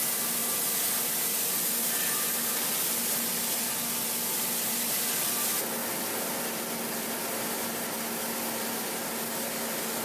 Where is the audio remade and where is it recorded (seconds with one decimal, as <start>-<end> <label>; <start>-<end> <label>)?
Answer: 0.0-5.8 recorded; 5.8-7.1 remade; 7.1-10.0 recorded